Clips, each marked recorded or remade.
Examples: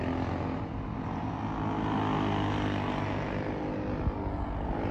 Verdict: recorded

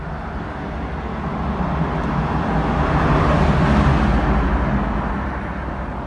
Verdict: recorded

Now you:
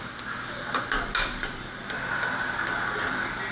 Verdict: recorded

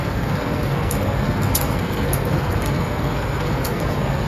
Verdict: remade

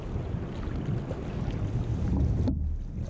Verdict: recorded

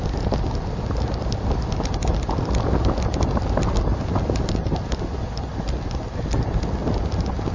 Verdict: recorded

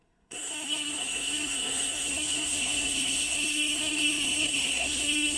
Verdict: remade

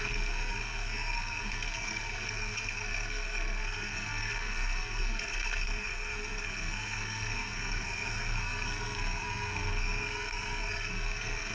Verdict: remade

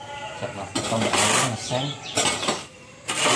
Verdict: recorded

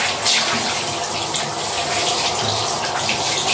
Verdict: recorded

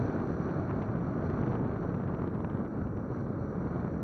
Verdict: recorded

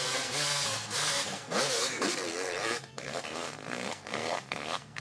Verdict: remade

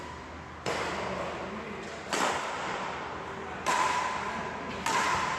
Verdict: recorded